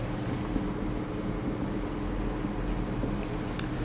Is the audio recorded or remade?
recorded